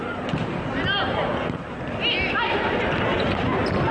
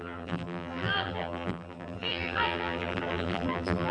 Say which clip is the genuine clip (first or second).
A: first